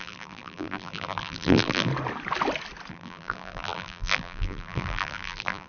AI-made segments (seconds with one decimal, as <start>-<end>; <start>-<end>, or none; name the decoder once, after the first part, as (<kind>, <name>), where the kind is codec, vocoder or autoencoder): 0.0-1.9 (vocoder, BigVGAN v2); 2.9-5.7